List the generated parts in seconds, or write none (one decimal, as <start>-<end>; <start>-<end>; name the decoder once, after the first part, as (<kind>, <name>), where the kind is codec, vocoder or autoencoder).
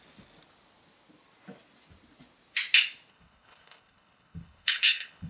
3.1-5.3 (codec, HILCodec)